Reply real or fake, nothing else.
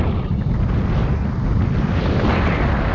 real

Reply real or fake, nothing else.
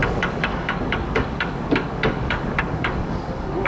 fake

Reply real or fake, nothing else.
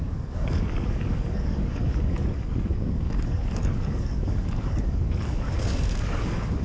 fake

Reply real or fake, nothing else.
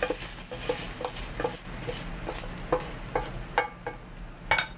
real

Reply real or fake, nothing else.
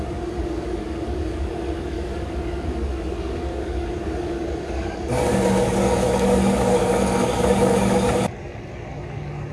fake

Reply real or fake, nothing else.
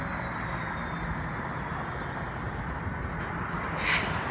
real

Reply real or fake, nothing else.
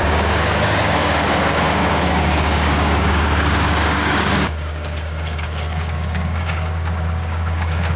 fake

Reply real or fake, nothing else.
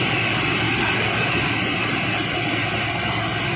real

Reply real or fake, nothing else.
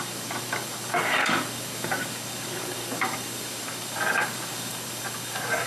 fake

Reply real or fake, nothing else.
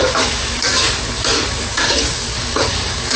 fake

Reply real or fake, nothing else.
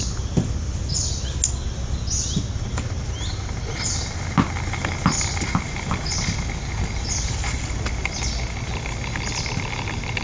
real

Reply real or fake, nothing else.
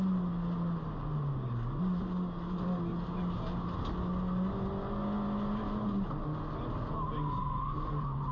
real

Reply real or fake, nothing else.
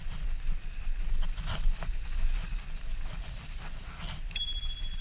real